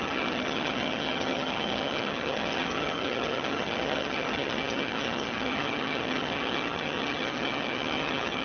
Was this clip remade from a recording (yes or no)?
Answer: yes